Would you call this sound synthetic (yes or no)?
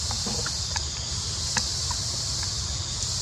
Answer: no